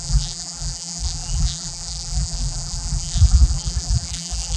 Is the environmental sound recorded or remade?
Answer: remade